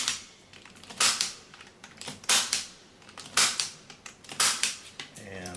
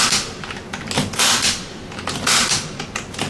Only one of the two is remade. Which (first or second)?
first